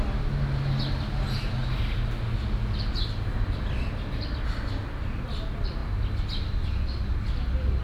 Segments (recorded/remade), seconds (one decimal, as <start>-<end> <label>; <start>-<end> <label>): 0.0-7.8 recorded